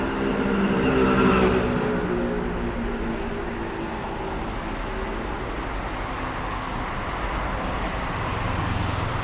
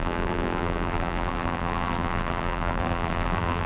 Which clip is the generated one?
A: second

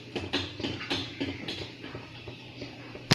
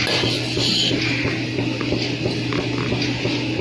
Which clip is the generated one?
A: first